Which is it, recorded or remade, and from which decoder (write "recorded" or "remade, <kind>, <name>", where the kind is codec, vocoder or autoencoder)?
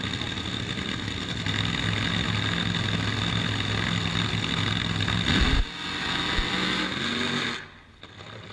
recorded